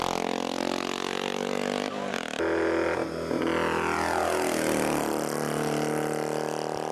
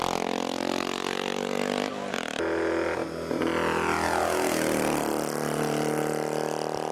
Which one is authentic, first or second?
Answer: first